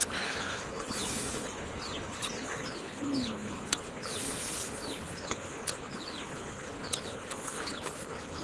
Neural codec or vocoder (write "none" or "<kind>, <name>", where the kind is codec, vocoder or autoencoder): codec, HILCodec